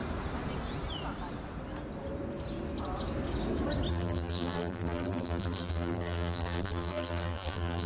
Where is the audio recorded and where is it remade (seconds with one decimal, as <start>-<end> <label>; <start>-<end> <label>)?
0.0-3.9 recorded; 3.9-7.9 remade